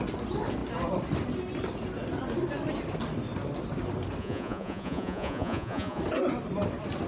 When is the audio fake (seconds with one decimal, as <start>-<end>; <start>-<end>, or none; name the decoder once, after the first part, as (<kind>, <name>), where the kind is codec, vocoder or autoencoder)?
4.2-6.0 (vocoder, Vocos)